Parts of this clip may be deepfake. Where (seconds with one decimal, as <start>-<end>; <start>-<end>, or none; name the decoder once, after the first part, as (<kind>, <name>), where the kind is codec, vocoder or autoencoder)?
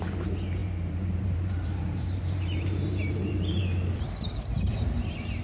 0.6-3.6 (vocoder, BigVGAN v2)